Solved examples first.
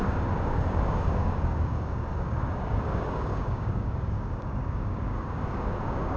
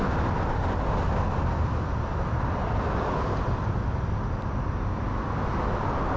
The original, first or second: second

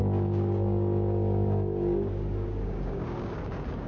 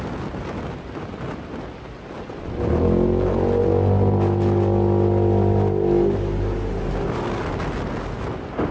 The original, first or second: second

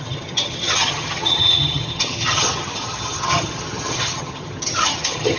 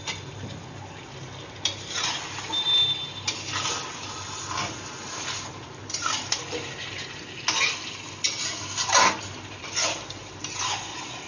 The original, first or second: second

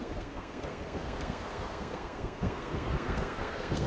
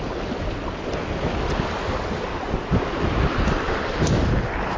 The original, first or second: second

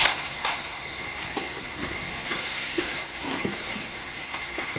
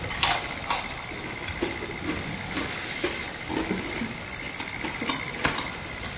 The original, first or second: second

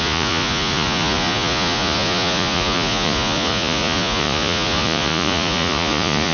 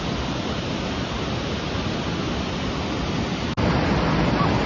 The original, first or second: second